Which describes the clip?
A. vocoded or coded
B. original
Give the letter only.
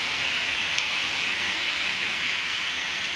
A